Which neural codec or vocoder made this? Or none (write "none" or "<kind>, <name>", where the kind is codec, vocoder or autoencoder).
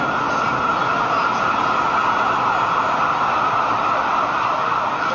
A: none